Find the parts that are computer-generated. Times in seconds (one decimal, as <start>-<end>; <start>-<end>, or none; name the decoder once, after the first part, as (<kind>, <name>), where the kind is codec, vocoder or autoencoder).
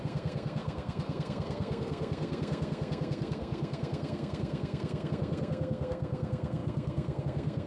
0.0-7.7 (codec, SNAC)